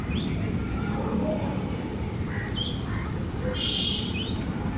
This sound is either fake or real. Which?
real